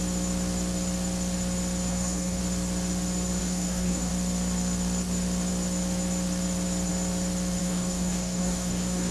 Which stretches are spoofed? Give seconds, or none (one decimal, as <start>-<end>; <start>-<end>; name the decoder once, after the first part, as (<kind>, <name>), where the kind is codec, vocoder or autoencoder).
1.9-2.4 (codec, DAC); 3.4-4.1; 7.6-9.1